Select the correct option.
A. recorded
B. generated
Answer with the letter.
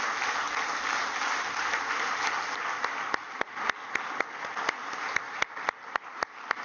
A